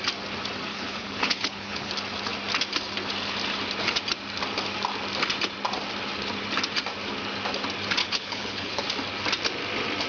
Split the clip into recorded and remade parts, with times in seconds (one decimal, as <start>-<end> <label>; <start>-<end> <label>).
0.0-0.7 recorded; 0.7-1.9 remade; 1.9-8.0 recorded; 8.0-8.8 remade; 8.8-10.1 recorded